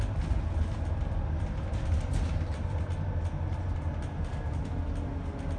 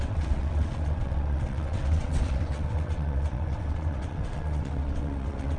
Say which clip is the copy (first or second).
second